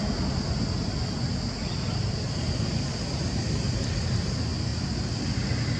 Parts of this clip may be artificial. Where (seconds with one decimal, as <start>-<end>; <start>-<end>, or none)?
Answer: none